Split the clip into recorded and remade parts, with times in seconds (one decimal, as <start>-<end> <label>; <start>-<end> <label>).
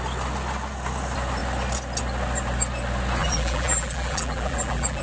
0.0-3.2 recorded; 3.2-5.0 remade